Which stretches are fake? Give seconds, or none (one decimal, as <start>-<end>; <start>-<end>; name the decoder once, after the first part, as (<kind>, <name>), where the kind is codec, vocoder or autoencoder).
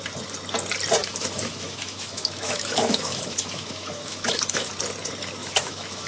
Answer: 1.0-4.7 (autoencoder, DAC-VAE); 5.4-6.1